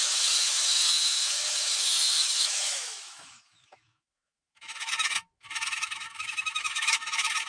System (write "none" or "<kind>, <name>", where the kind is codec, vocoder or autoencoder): autoencoder, DAC-VAE